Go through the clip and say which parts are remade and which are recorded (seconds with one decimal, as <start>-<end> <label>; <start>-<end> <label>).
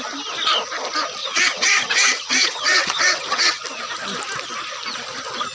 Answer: 0.0-1.2 recorded; 1.2-3.6 remade; 3.6-5.5 recorded